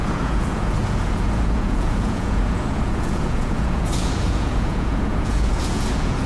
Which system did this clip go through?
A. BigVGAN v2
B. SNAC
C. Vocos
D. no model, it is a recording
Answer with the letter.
C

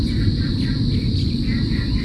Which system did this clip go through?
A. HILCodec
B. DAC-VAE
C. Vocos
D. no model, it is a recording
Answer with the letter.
D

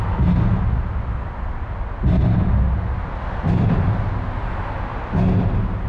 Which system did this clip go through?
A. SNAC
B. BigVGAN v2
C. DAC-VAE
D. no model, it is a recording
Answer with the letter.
D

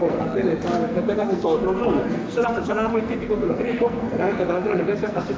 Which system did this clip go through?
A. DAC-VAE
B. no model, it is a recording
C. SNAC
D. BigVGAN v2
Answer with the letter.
C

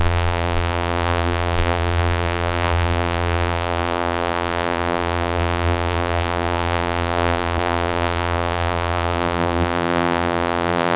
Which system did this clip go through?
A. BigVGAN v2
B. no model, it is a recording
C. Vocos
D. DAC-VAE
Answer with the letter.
A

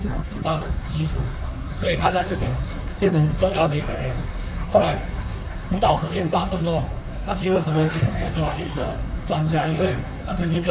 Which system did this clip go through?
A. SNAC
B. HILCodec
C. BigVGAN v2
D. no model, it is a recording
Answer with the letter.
A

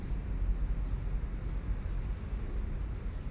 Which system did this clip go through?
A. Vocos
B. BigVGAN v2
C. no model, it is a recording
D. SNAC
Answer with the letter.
C